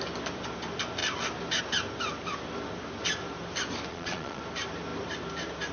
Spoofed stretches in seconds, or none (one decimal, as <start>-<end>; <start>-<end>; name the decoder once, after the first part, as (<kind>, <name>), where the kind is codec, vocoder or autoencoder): 3.9-4.4 (vocoder, Vocos)